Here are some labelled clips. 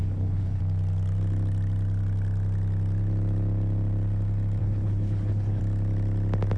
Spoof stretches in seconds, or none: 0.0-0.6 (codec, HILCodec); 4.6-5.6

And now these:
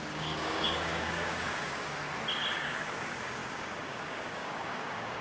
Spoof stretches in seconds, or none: 0.0-2.0 (codec, DAC); 2.6-5.2

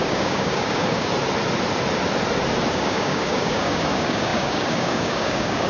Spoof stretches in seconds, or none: 0.0-1.1 (codec, DAC); 2.7-5.7